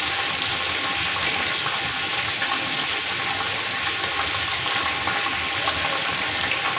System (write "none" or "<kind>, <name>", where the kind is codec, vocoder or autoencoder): none